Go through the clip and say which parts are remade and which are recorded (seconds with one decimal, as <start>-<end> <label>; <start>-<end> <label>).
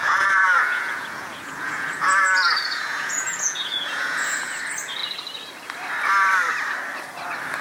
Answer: 0.0-4.6 remade; 4.6-7.6 recorded